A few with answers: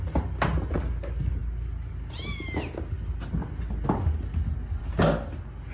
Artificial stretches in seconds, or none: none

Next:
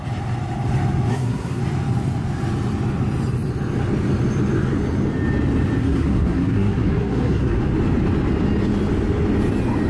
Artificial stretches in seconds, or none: 1.1-1.6 (codec, SNAC); 5.8-7.6

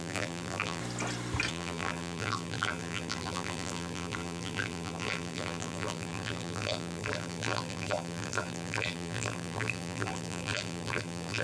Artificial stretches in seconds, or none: 0.0-0.8 (vocoder, BigVGAN v2); 1.5-11.4